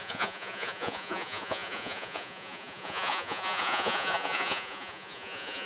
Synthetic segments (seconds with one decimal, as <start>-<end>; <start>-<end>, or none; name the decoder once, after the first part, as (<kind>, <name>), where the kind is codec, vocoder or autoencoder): 0.0-5.7 (vocoder, Vocos)